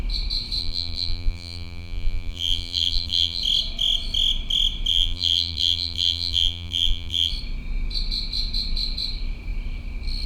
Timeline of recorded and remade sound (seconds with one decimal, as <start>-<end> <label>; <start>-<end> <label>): 0.0-0.6 recorded; 0.6-3.4 remade; 3.4-4.9 recorded; 4.9-7.3 remade; 7.3-10.3 recorded